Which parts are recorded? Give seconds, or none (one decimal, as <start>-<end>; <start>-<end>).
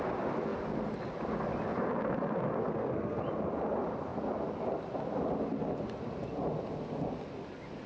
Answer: 0.0-2.6; 3.2-7.9